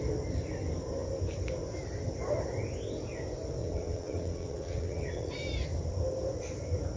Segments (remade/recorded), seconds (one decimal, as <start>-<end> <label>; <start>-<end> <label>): 0.0-3.6 recorded; 3.6-5.3 remade; 5.3-7.0 recorded